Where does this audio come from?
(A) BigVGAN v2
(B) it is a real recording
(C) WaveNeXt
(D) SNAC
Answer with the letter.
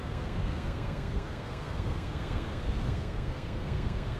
D